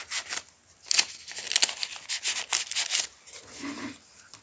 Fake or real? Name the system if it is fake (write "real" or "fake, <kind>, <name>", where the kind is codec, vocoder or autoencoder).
real